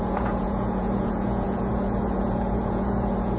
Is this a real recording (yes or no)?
no